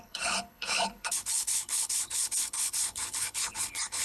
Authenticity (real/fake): fake